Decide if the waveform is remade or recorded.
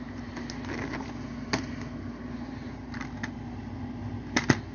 recorded